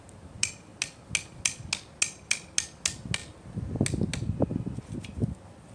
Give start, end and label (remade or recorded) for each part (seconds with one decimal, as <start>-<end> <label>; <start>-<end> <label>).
0.0-5.7 recorded